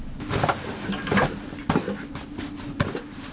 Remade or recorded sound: recorded